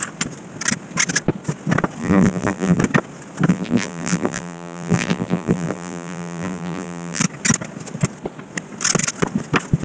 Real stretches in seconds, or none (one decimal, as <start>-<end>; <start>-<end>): 0.0-2.0; 2.8-3.5; 7.2-9.8